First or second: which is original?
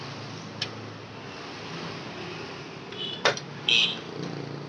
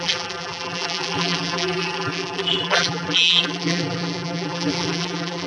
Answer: first